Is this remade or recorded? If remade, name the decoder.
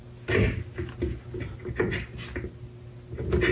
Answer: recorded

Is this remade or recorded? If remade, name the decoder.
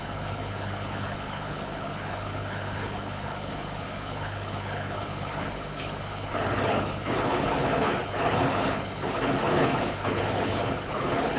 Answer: remade, codec, HILCodec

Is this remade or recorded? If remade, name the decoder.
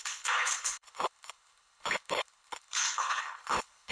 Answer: remade, codec, HILCodec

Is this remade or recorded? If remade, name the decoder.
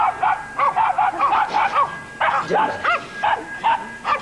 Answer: recorded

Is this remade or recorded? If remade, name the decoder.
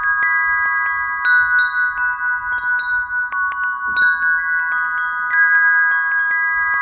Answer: recorded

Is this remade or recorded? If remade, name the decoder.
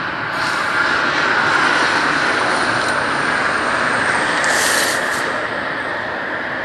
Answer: recorded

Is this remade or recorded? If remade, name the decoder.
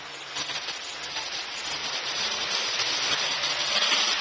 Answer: recorded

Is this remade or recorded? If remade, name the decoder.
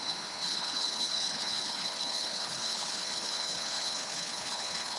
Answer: remade, codec, HILCodec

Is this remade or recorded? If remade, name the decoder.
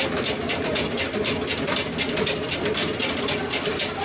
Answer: recorded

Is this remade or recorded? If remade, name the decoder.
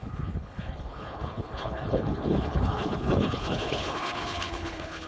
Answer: remade, codec, HILCodec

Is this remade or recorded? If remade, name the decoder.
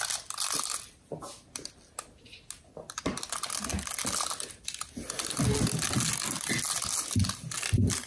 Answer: recorded